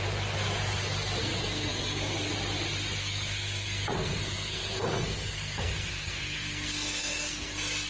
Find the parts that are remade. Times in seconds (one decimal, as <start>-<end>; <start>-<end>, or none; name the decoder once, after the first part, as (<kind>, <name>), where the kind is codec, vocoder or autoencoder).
1.2-2.3 (codec, SNAC); 3.0-7.9